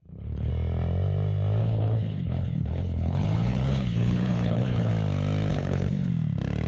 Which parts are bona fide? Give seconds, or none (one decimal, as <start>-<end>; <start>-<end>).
0.5-1.6; 4.9-5.5; 6.1-6.7